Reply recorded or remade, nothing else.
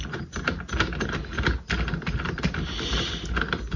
recorded